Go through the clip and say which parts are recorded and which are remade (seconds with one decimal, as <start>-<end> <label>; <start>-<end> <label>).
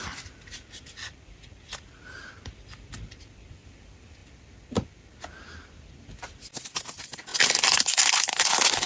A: 0.0-8.9 recorded